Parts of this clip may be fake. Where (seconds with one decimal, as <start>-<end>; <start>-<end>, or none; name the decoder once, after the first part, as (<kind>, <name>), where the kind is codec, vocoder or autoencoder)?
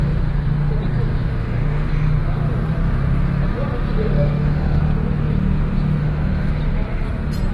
1.3-1.9 (autoencoder, DAC-VAE); 4.1-4.8; 6.0-6.5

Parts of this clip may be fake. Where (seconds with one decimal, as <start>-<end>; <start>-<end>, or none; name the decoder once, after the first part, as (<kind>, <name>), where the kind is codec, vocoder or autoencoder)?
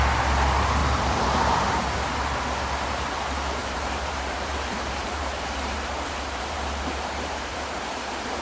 0.8-1.8 (vocoder, BigVGAN v2); 3.6-7.9